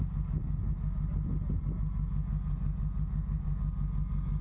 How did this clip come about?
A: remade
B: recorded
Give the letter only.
B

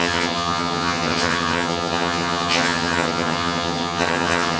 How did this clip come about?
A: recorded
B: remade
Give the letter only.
B